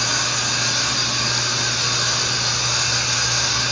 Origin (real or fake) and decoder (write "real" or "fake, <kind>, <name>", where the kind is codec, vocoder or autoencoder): real